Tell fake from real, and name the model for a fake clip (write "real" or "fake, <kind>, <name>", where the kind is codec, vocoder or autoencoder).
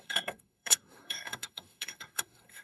fake, codec, SNAC